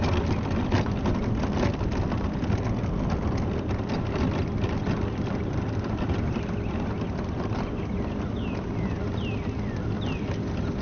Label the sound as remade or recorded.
recorded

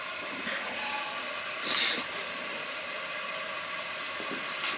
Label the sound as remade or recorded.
recorded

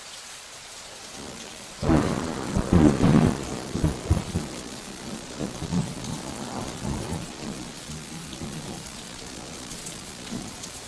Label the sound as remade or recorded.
remade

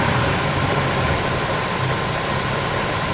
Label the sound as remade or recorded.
remade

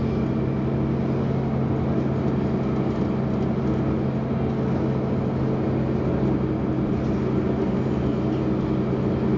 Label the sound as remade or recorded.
recorded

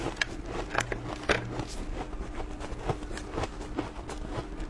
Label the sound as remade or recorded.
recorded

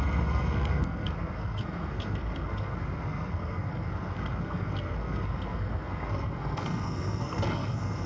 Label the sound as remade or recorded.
remade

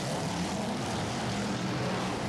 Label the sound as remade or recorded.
remade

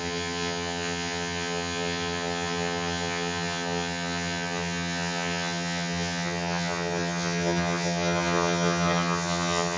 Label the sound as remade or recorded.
remade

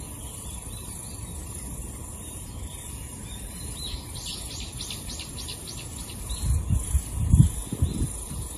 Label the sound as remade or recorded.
recorded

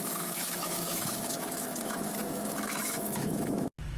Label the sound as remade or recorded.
remade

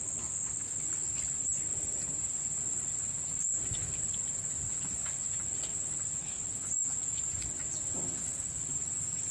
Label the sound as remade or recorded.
recorded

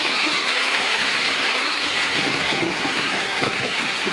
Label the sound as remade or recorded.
remade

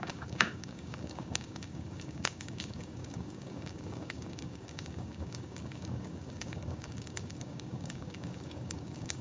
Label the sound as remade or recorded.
remade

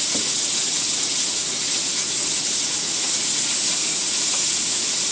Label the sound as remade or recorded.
remade